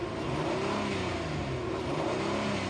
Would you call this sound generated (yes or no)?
no